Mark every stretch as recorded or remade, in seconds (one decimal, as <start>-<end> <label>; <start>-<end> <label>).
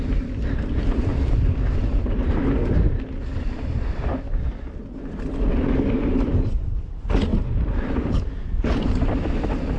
0.0-1.1 recorded; 1.1-2.2 remade; 2.2-7.3 recorded; 7.3-9.1 remade; 9.1-9.8 recorded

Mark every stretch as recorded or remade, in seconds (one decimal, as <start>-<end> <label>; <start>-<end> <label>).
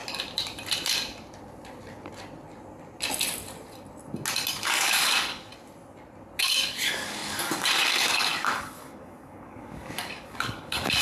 0.0-4.5 recorded; 4.5-5.5 remade; 5.5-6.4 recorded; 6.4-11.0 remade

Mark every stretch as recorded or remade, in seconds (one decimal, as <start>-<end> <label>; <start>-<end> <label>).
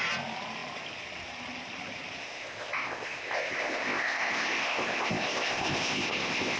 0.0-2.2 recorded; 2.2-6.6 remade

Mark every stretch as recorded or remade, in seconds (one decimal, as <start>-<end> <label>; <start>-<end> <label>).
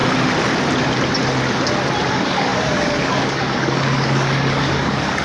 0.0-2.1 recorded; 2.1-5.2 remade